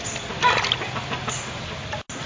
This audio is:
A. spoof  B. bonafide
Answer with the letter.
B